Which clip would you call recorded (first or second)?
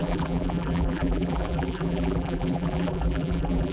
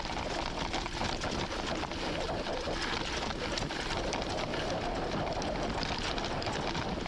second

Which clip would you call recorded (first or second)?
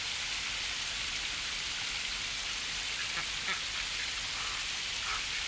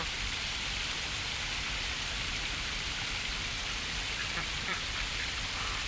first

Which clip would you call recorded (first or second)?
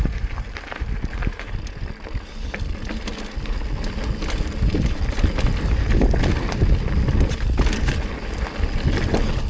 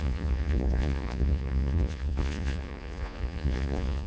first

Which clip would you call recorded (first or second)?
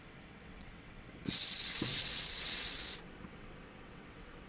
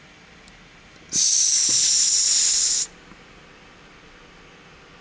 second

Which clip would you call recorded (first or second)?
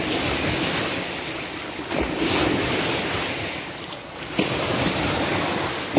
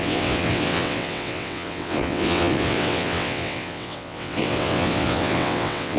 first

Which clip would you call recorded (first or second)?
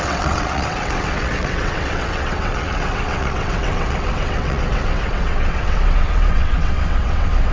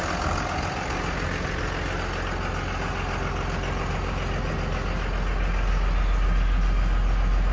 second